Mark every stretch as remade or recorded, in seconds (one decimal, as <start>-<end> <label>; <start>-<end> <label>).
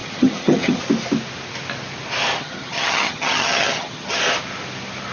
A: 0.0-0.8 remade; 0.8-2.4 recorded; 2.4-4.2 remade; 4.2-5.1 recorded